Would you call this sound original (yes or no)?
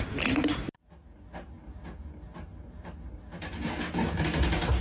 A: yes